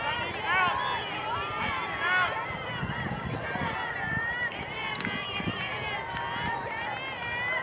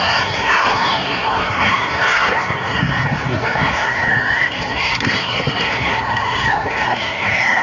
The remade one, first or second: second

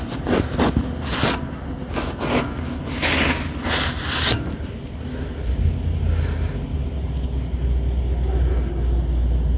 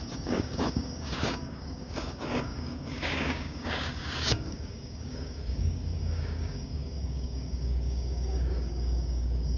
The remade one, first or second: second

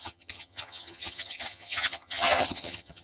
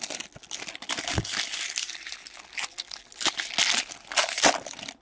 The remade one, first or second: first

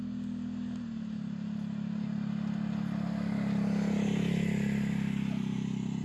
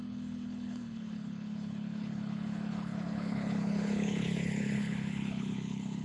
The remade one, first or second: second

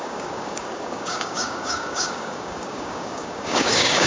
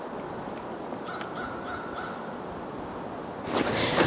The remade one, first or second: first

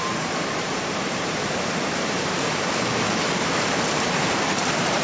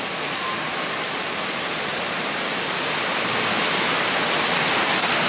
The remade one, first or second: first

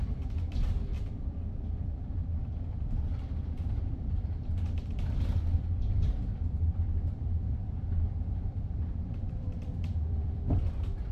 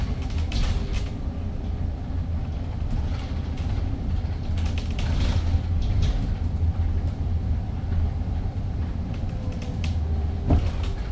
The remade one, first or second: first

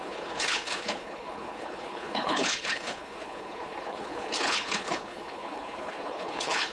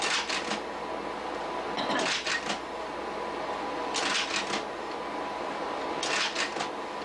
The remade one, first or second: first